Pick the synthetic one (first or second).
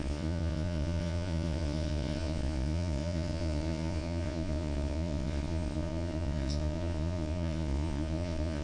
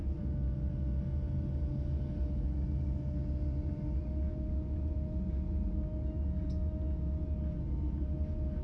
first